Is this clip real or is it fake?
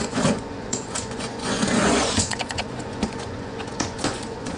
fake